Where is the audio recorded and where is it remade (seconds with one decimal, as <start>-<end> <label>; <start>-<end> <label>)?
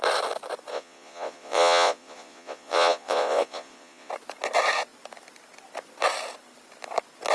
0.0-0.7 recorded; 0.7-4.1 remade; 4.1-7.3 recorded